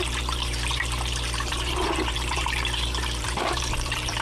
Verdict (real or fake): fake